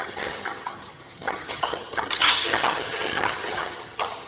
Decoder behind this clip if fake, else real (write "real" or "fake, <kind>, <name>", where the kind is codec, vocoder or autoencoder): fake, vocoder, HiFi-GAN